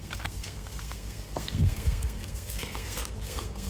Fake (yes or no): yes